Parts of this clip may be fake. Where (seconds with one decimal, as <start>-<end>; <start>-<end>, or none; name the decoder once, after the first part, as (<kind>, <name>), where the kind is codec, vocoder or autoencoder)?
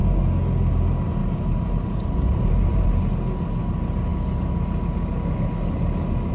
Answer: 1.2-3.1 (vocoder, BigVGAN v2)